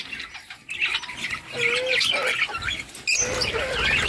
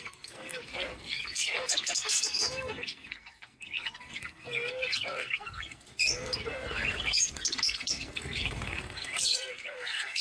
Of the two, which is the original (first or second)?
first